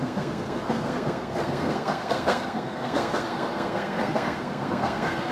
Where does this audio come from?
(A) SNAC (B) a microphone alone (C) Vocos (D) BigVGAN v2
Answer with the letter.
A